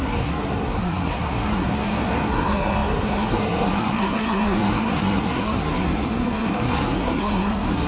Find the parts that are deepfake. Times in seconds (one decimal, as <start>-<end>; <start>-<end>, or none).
0.0-7.9